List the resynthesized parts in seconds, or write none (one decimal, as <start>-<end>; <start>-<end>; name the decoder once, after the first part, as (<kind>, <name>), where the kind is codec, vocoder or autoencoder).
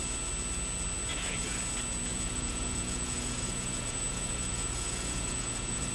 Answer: 1.1-1.6 (vocoder, Vocos); 2.1-5.9